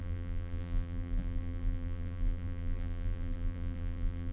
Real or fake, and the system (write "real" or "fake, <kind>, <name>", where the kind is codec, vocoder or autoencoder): fake, vocoder, BigVGAN v2